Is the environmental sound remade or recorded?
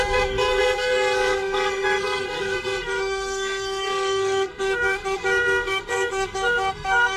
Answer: remade